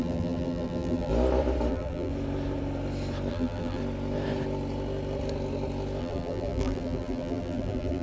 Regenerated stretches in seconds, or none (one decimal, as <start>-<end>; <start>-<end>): 0.0-1.1; 1.7-2.1; 3.3-3.8; 6.0-8.0